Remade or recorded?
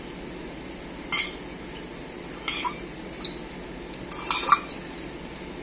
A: recorded